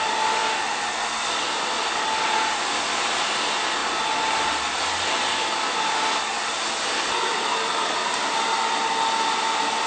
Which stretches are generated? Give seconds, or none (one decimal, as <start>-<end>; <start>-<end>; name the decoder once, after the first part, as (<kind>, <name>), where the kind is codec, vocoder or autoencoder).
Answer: none